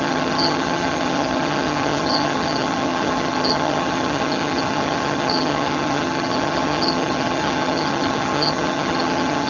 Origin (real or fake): fake